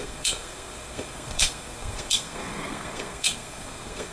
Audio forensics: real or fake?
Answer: fake